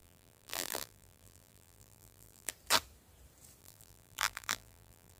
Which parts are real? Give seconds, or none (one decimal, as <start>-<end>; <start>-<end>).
2.5-3.6